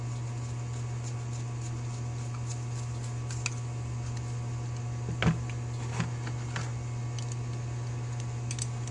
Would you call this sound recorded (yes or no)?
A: yes